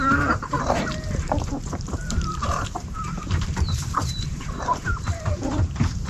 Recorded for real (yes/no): no